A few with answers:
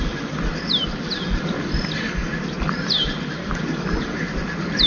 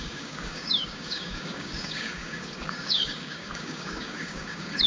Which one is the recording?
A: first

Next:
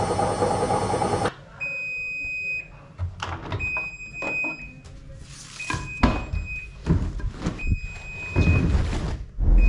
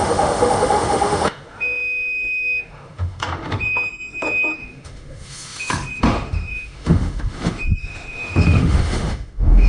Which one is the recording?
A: first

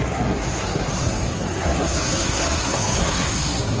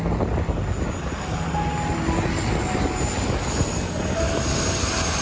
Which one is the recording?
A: second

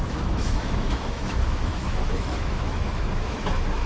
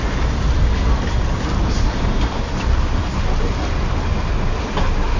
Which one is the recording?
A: second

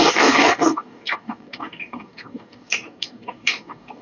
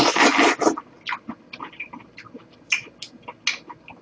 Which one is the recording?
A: second